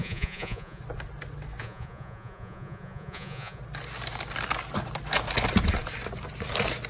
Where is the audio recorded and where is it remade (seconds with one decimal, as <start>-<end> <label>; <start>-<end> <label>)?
0.0-0.8 remade; 0.8-1.6 recorded; 1.6-3.6 remade; 3.6-6.9 recorded